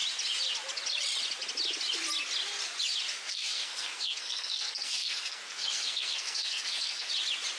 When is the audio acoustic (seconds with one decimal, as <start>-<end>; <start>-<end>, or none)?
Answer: 0.0-3.1; 7.1-7.6